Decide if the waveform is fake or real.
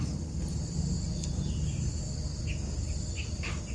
real